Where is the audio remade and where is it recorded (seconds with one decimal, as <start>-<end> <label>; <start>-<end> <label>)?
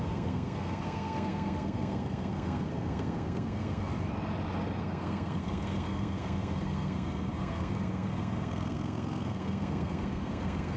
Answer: 0.0-3.9 remade; 3.9-4.8 recorded; 4.8-10.8 remade